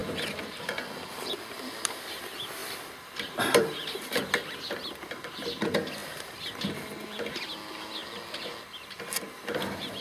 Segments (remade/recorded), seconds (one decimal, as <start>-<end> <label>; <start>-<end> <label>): 0.0-2.0 remade; 2.0-2.6 recorded; 2.6-3.6 remade; 3.6-10.0 recorded